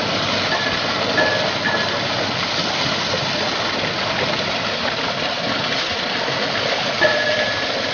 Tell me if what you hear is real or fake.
real